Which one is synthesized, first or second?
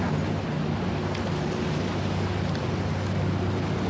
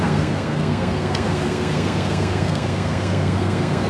second